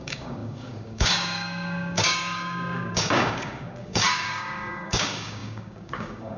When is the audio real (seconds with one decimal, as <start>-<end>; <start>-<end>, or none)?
none